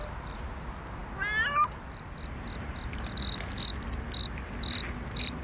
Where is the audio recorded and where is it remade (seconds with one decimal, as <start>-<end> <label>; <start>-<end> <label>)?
0.0-5.4 recorded